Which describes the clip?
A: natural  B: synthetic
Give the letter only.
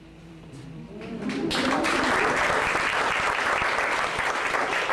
B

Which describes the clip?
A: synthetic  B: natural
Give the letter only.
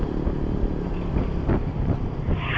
B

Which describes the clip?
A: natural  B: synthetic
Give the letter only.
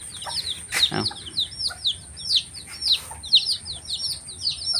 A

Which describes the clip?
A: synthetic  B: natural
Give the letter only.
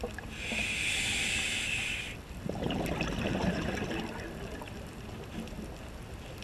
B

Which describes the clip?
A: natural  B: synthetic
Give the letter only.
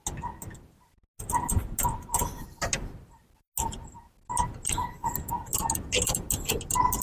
A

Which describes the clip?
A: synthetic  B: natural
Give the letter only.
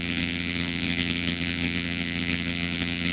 A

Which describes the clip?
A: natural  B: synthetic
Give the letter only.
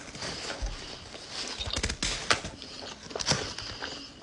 A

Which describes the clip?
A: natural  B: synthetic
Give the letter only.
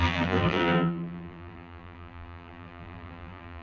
B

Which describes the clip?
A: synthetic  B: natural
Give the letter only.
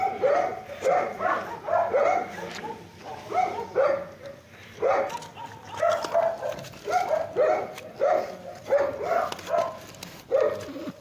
B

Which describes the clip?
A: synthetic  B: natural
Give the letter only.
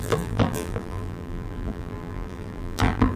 A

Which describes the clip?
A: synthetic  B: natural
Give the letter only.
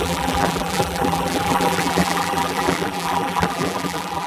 A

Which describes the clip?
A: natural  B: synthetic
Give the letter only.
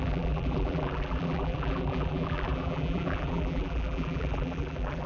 B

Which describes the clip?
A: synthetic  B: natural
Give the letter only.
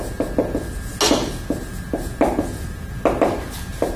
B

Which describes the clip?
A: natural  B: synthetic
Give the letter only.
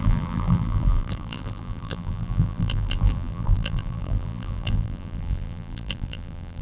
B